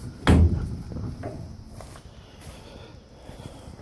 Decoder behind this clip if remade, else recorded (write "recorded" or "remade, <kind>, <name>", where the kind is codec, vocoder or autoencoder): recorded